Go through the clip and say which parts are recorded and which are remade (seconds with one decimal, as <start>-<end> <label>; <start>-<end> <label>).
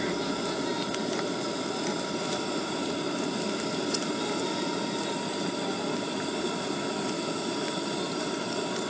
0.0-8.9 recorded